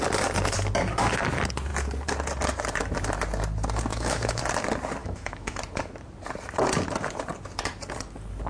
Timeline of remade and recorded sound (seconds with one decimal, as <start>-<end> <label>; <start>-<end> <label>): 0.0-3.9 recorded; 3.9-4.4 remade; 4.4-5.0 recorded; 5.0-5.6 remade; 5.6-8.5 recorded